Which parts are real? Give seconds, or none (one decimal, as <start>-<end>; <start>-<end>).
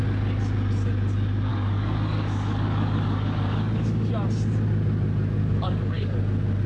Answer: 0.0-1.5; 4.1-5.4; 6.2-6.7